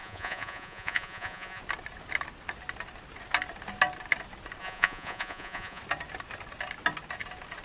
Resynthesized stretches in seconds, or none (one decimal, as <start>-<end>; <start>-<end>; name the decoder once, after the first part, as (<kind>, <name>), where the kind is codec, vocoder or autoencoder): 0.0-1.6 (vocoder, Vocos); 4.6-5.8